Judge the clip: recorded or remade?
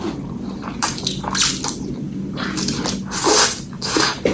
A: recorded